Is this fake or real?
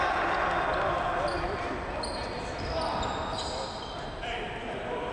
real